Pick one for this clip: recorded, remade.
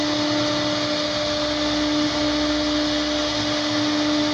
recorded